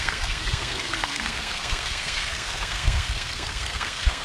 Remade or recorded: remade